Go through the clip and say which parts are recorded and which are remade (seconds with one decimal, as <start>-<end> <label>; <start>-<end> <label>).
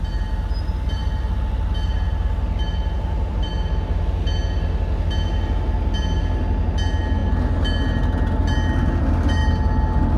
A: 0.0-10.2 recorded